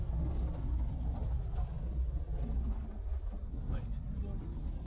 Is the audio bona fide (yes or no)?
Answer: yes